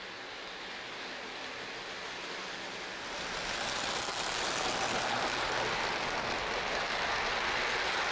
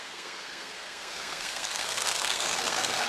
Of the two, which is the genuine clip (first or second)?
first